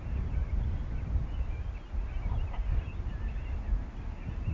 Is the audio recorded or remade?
recorded